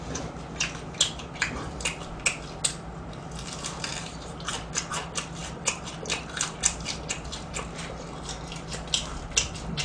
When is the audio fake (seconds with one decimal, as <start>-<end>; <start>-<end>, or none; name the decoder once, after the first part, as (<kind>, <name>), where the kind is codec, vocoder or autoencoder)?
3.9-4.5 (vocoder, BigVGAN v2); 5.4-7.1